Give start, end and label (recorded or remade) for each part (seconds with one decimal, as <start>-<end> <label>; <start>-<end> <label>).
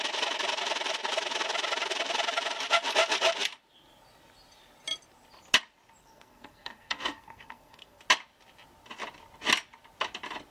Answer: 0.0-6.0 recorded; 6.0-8.0 remade; 8.0-10.5 recorded